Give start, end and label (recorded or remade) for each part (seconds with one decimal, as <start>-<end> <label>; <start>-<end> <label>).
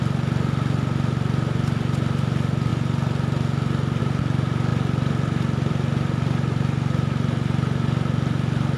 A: 0.0-8.8 recorded